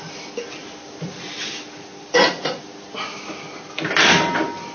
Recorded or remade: recorded